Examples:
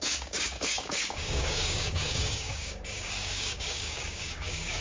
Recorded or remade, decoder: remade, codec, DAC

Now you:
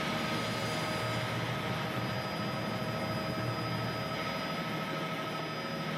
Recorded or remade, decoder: recorded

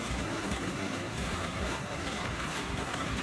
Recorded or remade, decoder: remade, codec, SNAC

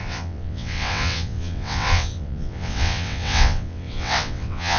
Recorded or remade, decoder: remade, vocoder, WaveNeXt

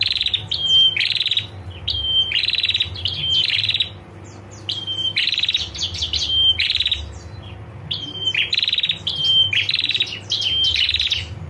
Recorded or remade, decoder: remade, vocoder, BigVGAN v2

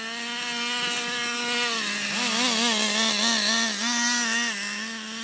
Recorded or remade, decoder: recorded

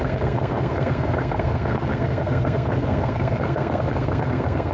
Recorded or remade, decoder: remade, codec, SNAC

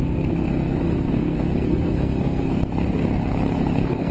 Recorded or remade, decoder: remade, codec, SNAC